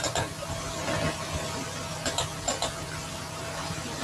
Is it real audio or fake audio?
real